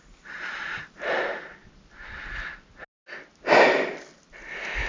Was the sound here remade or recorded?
recorded